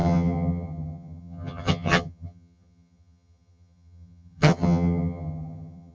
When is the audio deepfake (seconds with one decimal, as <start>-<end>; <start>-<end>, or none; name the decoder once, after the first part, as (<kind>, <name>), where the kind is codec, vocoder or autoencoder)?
0.0-5.9 (vocoder, HiFi-GAN)